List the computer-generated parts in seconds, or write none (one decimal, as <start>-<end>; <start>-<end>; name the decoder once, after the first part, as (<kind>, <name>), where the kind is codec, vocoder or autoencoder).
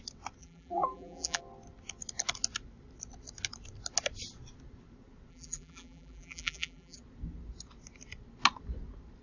0.4-1.4 (vocoder, BigVGAN v2); 5.3-7.0